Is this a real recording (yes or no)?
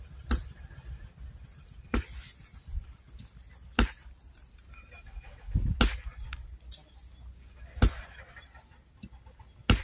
yes